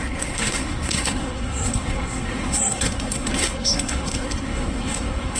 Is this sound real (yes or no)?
no